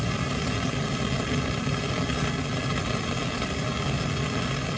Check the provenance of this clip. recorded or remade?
recorded